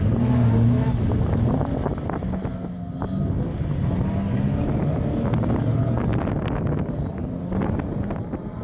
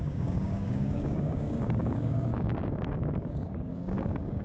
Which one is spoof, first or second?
second